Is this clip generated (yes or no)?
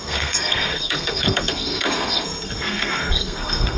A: yes